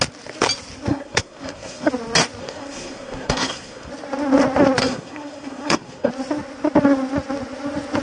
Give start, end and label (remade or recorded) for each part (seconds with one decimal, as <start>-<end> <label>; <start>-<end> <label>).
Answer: 0.0-0.9 recorded; 0.9-1.9 remade; 1.9-2.4 recorded; 2.4-3.9 remade; 3.9-4.8 recorded; 4.8-6.1 remade; 6.1-8.0 recorded